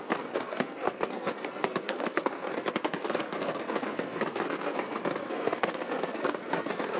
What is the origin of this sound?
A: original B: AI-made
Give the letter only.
B